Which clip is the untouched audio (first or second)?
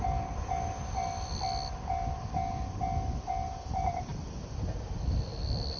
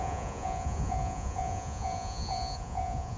first